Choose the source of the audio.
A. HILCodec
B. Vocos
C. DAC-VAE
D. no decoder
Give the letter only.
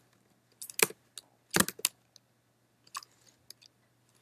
D